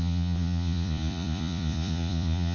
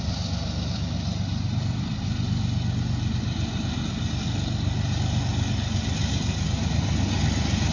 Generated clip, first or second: first